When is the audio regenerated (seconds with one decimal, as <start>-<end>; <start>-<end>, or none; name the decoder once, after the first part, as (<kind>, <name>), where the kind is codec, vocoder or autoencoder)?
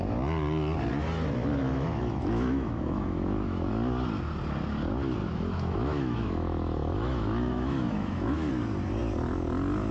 1.6-3.7 (autoencoder, DAC-VAE); 5.2-8.5